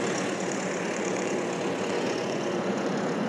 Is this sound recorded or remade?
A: remade